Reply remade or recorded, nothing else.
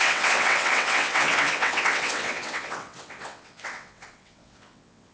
remade